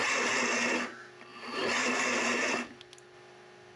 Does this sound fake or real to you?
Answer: real